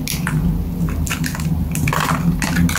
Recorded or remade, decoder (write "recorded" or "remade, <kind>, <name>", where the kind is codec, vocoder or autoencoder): recorded